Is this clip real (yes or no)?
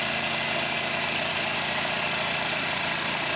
yes